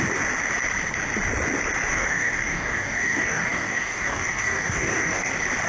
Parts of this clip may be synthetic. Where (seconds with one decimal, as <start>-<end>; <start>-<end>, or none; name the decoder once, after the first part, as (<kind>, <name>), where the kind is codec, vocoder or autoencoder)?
1.9-5.3 (codec, DAC)